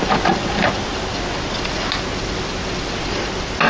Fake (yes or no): no